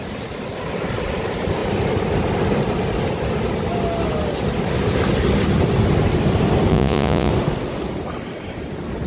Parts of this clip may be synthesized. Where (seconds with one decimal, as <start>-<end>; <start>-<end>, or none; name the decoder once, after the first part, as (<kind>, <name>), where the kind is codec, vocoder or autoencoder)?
6.7-7.3 (vocoder, Vocos)